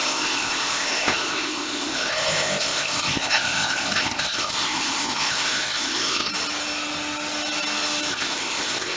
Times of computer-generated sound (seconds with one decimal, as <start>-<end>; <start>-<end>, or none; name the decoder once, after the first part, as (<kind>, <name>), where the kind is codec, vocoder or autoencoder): 0.0-6.3 (codec, ZipCodec); 8.1-9.0